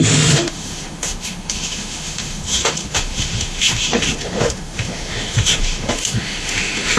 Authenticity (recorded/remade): remade